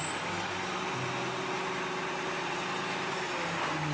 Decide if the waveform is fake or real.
real